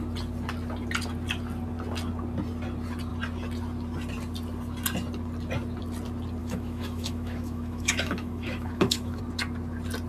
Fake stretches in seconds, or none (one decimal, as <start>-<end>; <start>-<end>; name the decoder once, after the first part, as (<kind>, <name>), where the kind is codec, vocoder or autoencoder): 6.4-9.2 (autoencoder, DAC-VAE)